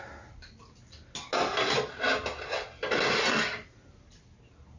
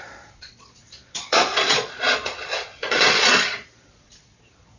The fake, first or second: second